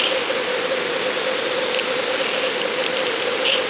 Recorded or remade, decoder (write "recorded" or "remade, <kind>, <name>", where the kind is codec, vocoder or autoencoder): recorded